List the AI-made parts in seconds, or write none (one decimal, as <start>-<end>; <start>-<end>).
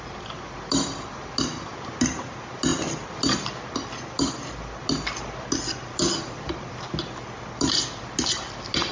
none